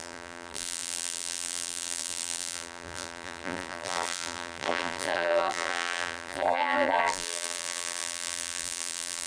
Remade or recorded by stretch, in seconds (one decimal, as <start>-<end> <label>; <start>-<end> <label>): 0.0-9.3 remade